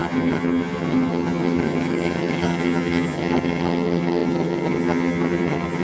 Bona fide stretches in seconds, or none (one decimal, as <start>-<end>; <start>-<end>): none